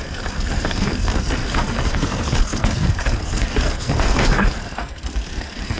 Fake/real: fake